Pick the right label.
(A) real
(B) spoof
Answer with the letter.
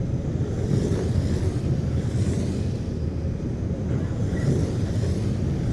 A